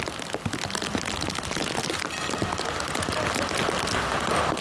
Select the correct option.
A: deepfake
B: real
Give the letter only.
B